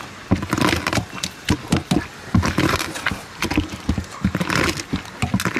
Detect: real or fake real